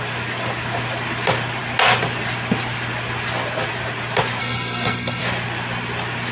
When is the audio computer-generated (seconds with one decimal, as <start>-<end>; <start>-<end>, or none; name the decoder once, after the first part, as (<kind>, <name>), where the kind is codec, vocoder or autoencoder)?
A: 4.4-5.2 (codec, SNAC)